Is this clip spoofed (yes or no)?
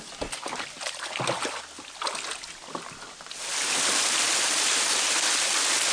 no